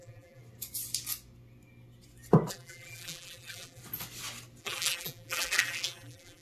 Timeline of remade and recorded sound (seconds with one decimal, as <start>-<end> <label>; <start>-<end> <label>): 0.0-0.4 remade; 0.4-2.5 recorded; 2.5-3.8 remade; 3.8-4.6 recorded; 4.6-6.4 remade